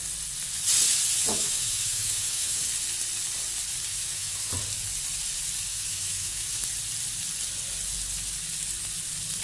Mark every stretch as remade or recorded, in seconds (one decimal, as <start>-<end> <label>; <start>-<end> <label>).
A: 0.0-1.3 recorded; 1.3-2.6 remade; 2.6-3.9 recorded; 3.9-4.5 remade; 4.5-5.7 recorded; 5.7-6.6 remade; 6.6-9.4 recorded